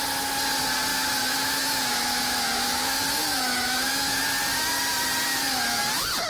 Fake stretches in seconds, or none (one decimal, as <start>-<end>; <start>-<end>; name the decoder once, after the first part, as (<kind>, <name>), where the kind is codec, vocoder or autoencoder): 0.9-4.2 (autoencoder, DAC-VAE); 5.3-5.8